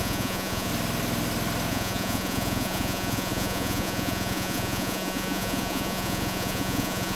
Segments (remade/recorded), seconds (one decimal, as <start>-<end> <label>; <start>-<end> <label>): 0.0-0.7 remade; 0.7-1.7 recorded; 1.7-7.2 remade